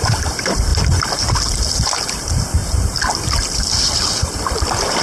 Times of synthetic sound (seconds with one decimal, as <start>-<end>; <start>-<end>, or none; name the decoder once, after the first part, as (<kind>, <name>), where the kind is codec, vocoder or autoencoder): 0.0-0.7 (vocoder, BigVGAN v2); 1.8-2.6; 3.7-5.0